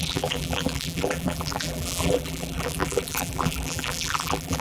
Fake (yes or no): yes